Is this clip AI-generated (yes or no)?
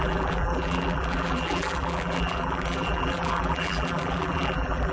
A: yes